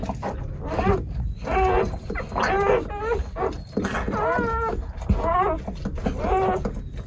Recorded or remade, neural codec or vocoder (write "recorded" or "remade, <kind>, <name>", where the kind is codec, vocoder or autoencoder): recorded